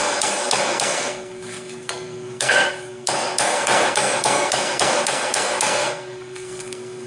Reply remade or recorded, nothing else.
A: remade